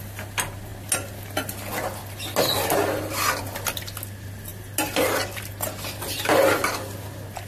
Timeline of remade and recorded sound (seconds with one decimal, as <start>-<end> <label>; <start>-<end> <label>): 0.0-7.5 recorded